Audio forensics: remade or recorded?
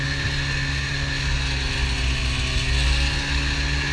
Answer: recorded